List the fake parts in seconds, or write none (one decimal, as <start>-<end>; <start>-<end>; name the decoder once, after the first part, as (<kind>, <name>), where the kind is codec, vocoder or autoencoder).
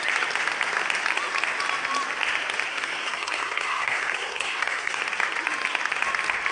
2.7-5.0 (codec, SNAC)